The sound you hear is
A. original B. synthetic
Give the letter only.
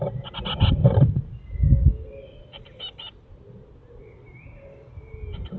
A